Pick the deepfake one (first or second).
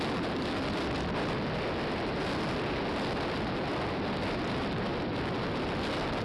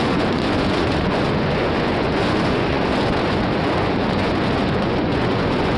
second